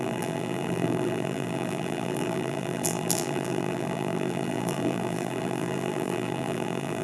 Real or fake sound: fake